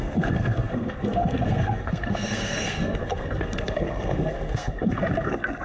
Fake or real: fake